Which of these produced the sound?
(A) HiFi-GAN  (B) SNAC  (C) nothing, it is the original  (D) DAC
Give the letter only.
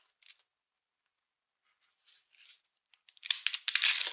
C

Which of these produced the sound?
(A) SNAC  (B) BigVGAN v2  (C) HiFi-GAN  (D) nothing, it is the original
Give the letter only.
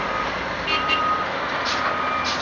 D